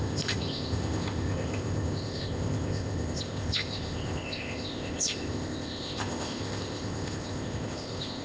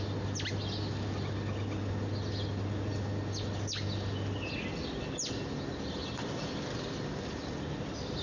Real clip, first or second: second